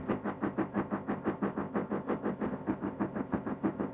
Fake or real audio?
fake